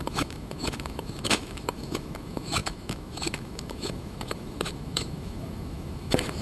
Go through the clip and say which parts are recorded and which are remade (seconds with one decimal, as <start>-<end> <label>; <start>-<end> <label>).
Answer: 0.0-6.4 remade